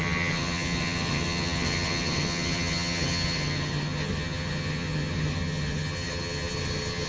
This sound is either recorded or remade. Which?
remade